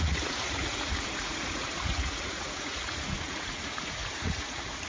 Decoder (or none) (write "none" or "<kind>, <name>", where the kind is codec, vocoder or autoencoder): vocoder, Vocos